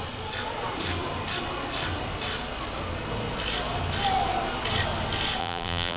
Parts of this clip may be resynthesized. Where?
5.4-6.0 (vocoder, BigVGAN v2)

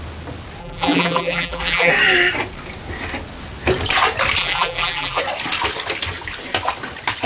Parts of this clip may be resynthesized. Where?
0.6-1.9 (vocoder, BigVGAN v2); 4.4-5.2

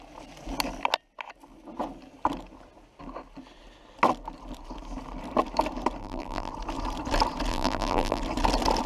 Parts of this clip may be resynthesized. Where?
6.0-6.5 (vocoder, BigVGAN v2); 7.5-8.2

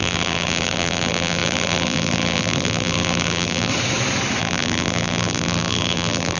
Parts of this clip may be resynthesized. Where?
0.0-3.7 (vocoder, BigVGAN v2); 4.4-6.4

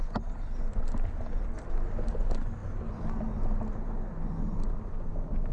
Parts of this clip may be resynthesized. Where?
none

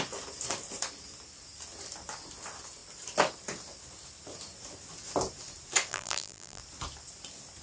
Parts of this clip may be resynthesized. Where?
5.9-6.6 (vocoder, BigVGAN v2)

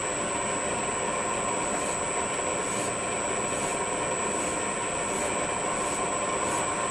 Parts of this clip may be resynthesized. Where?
none